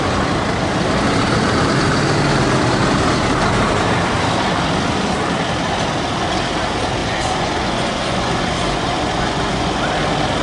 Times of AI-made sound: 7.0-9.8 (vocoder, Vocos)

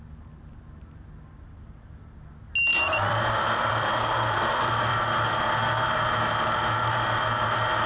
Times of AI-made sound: 2.7-5.5 (vocoder, BigVGAN v2)